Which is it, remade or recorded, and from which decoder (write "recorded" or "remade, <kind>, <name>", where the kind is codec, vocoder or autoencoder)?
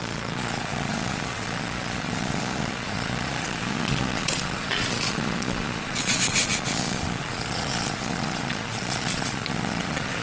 remade, vocoder, Vocos